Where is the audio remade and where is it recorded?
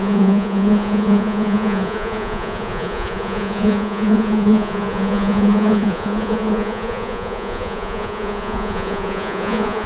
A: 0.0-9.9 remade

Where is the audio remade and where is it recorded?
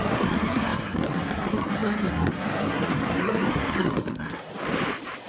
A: 0.0-4.5 remade; 4.5-5.3 recorded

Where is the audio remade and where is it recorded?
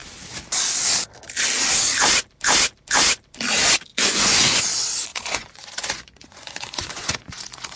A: 0.0-3.9 recorded; 3.9-4.6 remade; 4.6-5.1 recorded; 5.1-7.8 remade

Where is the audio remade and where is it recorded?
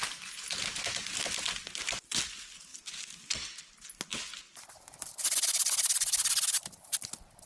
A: 0.0-7.5 recorded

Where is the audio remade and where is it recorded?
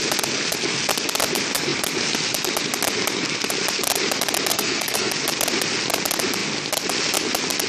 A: 0.0-4.5 recorded; 4.5-5.1 remade; 5.1-7.7 recorded